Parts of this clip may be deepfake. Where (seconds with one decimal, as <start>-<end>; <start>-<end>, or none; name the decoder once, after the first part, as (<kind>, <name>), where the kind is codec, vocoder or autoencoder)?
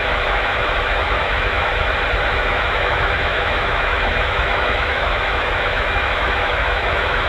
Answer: 0.0-1.7 (autoencoder, DAC-VAE); 2.3-7.3